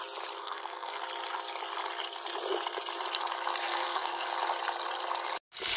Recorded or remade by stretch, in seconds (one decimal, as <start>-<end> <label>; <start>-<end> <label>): 0.0-0.4 recorded; 0.4-1.0 remade; 1.0-3.7 recorded; 3.7-4.3 remade; 4.3-5.8 recorded